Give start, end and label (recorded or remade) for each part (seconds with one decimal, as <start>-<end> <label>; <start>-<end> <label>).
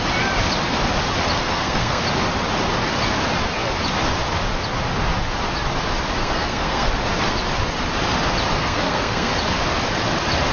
0.0-1.4 recorded; 1.4-2.0 remade; 2.0-6.2 recorded; 6.2-6.9 remade; 6.9-8.5 recorded; 8.5-9.3 remade; 9.3-10.5 recorded